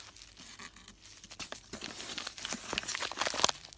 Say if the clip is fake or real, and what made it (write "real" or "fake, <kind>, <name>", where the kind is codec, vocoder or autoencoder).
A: real